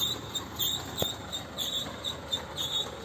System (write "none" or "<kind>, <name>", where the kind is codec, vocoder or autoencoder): none